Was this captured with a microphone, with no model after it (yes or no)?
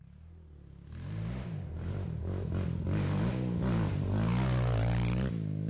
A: yes